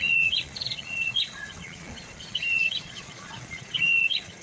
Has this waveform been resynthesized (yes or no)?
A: yes